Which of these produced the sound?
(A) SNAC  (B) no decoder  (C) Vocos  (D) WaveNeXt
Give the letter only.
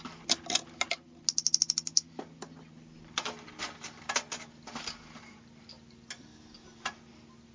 B